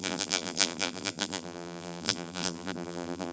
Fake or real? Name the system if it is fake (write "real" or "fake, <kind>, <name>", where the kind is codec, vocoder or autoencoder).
fake, vocoder, BigVGAN v2